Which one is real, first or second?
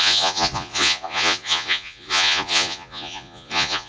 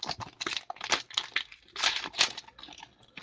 second